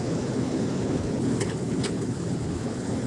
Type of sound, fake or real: fake